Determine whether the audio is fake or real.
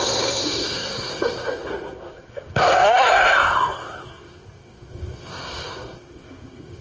fake